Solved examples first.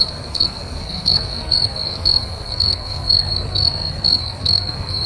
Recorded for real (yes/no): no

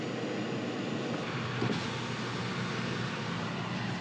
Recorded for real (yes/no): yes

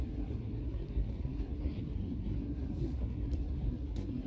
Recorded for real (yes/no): no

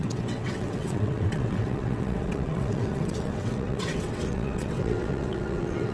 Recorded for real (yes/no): no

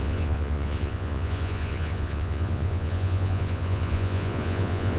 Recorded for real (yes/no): no